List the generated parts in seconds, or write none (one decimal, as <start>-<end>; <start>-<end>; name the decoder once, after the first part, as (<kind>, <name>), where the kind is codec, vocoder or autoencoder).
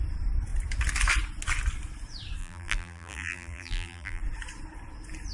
2.4-4.2 (vocoder, BigVGAN v2)